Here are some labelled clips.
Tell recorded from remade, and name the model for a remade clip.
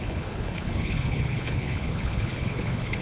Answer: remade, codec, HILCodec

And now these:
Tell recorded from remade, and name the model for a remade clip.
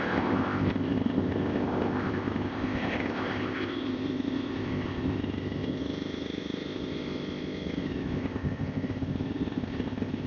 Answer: remade, codec, ZipCodec